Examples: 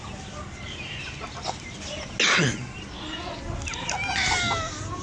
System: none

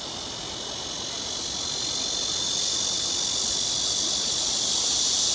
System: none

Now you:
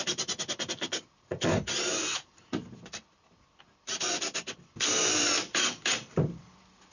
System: vocoder, BigVGAN v2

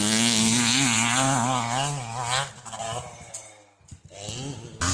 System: none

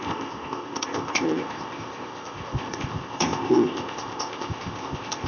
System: codec, ZipCodec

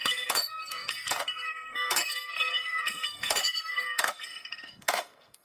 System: codec, SNAC